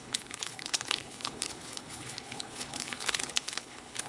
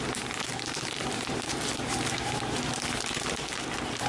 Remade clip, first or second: first